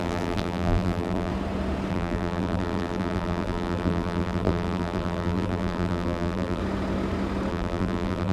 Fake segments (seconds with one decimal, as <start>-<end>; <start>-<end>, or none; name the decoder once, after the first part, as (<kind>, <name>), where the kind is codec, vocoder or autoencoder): 0.0-1.3 (vocoder, BigVGAN v2); 1.9-6.6; 7.5-8.3